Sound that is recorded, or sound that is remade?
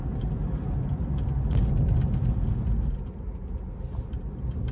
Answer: recorded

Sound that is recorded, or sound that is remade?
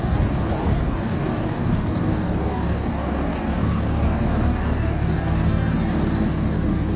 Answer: remade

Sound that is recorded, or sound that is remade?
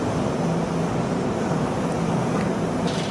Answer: recorded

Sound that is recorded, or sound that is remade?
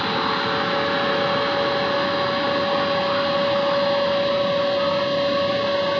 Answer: recorded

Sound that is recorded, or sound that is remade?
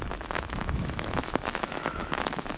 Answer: remade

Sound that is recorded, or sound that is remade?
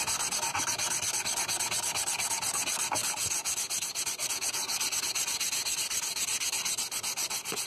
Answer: recorded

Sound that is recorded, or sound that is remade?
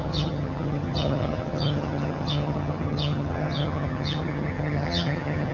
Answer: remade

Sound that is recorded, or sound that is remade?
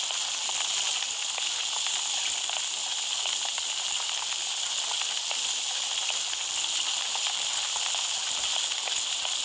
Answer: recorded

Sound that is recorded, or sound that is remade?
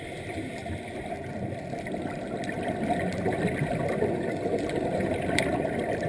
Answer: recorded